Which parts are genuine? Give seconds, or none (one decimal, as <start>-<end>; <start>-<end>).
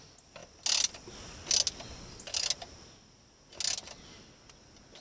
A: 0.0-5.0